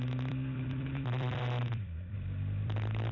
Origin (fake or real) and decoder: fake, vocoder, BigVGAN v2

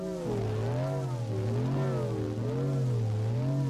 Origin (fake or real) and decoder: real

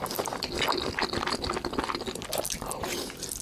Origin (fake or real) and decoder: real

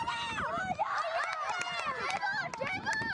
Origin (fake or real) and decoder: real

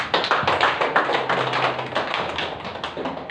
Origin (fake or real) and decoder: real